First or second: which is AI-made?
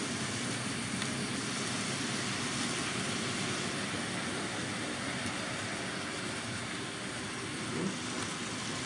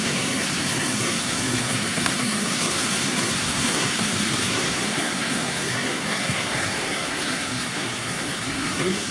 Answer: second